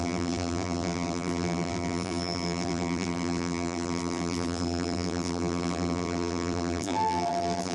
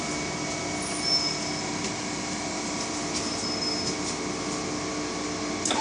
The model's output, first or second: first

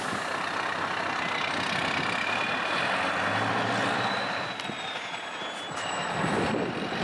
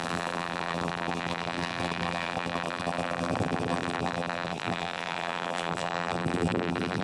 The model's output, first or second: second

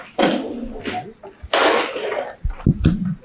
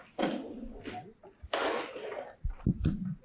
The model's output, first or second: second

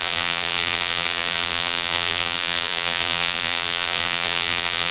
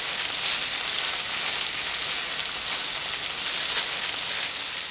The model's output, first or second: first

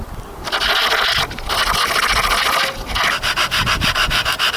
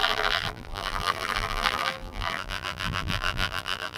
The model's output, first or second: second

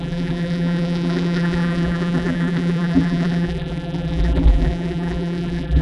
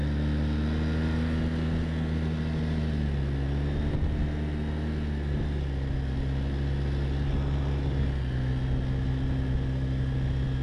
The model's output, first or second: first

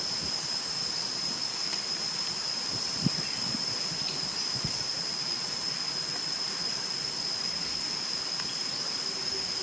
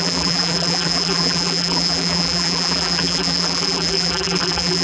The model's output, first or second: second